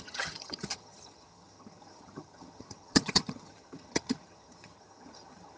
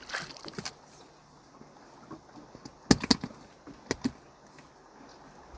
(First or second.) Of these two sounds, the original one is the second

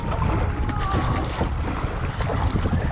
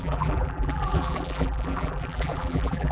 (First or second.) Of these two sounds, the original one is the first